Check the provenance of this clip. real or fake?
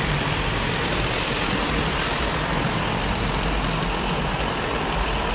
real